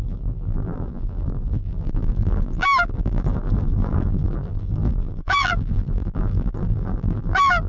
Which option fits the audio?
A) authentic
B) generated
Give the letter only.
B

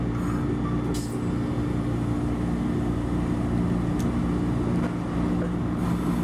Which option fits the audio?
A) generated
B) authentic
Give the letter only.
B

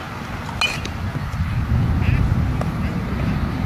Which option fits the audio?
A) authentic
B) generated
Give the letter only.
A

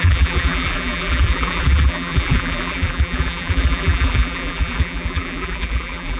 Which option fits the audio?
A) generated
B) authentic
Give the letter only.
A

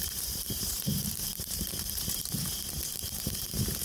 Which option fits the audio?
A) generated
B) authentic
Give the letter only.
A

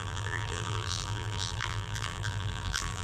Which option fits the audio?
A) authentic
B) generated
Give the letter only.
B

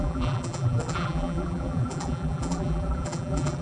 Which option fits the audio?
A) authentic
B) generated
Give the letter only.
B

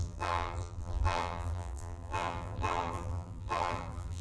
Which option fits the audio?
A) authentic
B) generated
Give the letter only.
B